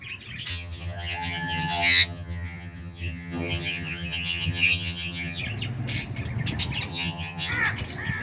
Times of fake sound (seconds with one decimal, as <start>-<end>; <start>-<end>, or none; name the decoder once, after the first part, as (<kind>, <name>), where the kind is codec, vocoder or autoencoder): 0.5-5.4 (vocoder, HiFi-GAN); 6.9-7.5